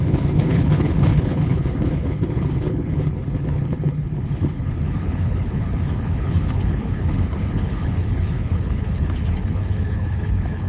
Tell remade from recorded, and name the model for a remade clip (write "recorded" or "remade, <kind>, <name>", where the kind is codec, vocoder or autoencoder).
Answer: remade, codec, HILCodec